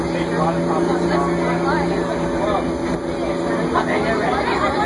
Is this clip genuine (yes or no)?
yes